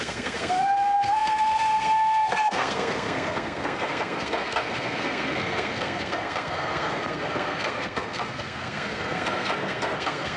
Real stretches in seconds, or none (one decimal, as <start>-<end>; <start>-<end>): none